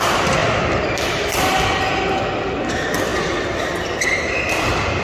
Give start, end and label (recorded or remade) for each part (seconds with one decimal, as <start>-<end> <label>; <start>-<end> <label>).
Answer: 0.0-5.0 recorded